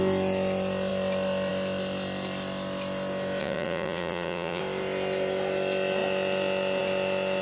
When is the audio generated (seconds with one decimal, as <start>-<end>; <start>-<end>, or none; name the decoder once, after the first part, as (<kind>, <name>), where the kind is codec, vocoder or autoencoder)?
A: 3.4-4.6 (vocoder, Vocos)